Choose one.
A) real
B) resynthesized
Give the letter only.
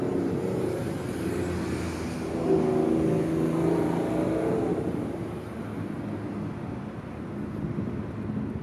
A